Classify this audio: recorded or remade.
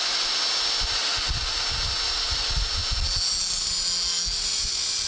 recorded